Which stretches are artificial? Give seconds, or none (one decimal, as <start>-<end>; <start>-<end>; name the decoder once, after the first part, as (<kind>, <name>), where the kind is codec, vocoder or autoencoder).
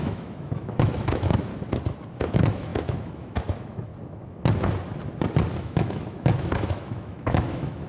0.0-1.5 (autoencoder, DAC-VAE); 2.1-3.9; 5.6-7.9